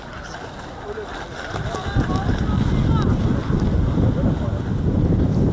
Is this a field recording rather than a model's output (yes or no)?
yes